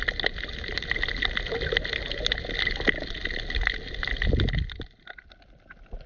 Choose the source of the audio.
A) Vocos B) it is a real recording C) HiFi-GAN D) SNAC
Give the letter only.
B